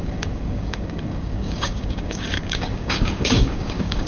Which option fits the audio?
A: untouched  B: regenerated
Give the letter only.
B